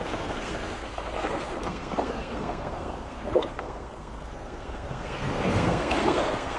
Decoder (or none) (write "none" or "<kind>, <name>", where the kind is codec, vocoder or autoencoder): codec, SNAC